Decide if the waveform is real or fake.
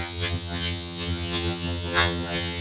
fake